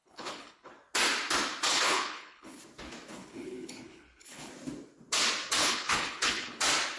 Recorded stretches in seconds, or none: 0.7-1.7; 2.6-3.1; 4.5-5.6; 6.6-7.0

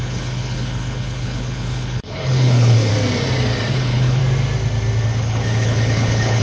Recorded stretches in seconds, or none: 2.9-3.7; 4.2-5.2

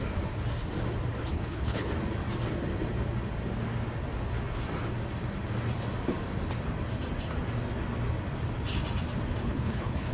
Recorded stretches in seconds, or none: 0.0-1.3; 1.9-9.4

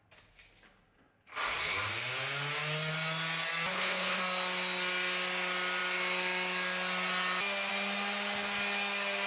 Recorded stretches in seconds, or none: 0.0-3.7; 4.2-9.3

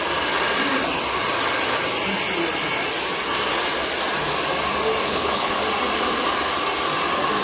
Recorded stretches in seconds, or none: 0.0-5.0; 5.6-7.4

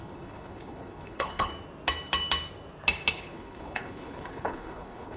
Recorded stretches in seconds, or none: 1.5-3.1

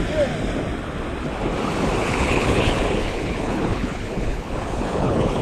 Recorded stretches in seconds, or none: 0.0-2.0

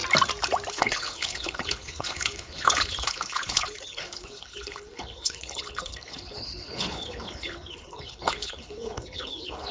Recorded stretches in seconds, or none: 0.0-0.7